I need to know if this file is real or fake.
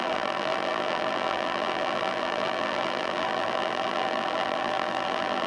fake